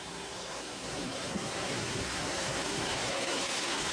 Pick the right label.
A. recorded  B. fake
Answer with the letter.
B